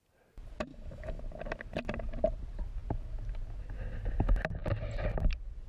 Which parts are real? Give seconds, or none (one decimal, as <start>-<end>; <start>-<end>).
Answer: 0.0-0.7; 1.2-5.7